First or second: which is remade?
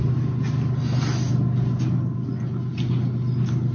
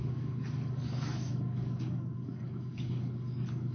second